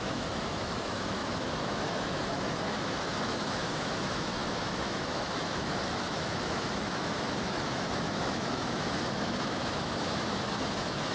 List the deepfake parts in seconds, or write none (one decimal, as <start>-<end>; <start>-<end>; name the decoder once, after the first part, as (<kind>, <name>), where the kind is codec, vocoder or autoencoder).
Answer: 0.0-11.1 (autoencoder, DAC-VAE)